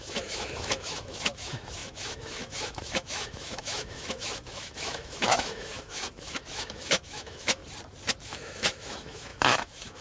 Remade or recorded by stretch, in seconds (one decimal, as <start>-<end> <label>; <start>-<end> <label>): 0.0-7.6 remade; 7.6-8.2 recorded; 8.2-10.0 remade